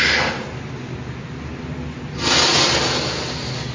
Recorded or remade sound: recorded